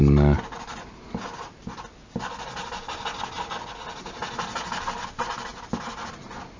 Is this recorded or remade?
recorded